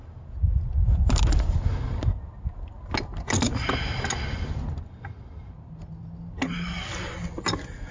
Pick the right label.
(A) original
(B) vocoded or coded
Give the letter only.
A